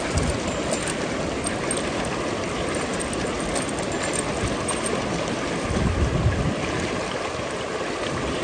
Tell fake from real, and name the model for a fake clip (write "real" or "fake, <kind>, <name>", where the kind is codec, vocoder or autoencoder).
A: real